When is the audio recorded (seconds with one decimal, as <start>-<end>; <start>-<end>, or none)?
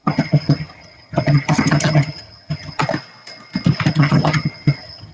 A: 2.8-3.9